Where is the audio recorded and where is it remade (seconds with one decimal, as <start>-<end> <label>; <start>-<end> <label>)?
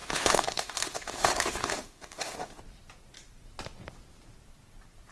0.0-2.6 remade; 2.6-5.1 recorded